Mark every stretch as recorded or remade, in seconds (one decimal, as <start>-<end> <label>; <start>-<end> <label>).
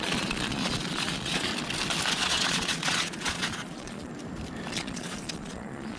0.0-1.5 remade; 1.5-2.1 recorded; 2.1-4.1 remade; 4.1-4.7 recorded; 4.7-6.0 remade